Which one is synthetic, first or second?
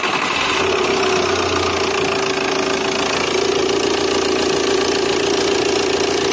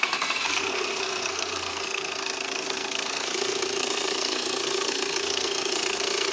second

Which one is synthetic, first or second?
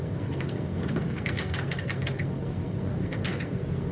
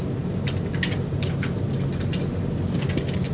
first